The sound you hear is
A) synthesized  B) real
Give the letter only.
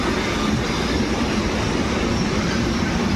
B